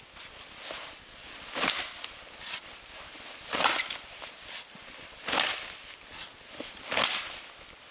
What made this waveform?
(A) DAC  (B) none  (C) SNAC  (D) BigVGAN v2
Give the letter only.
B